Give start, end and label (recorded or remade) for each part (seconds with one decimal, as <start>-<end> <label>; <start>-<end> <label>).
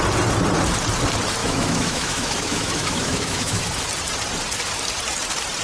0.0-1.4 recorded; 1.4-3.6 remade; 3.6-5.6 recorded